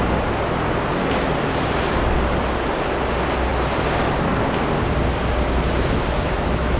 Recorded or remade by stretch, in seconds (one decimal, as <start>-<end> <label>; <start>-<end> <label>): 0.0-6.8 recorded